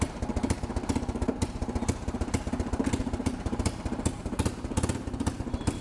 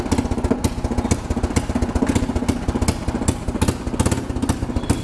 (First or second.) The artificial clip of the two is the first